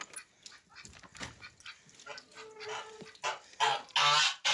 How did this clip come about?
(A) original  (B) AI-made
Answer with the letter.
A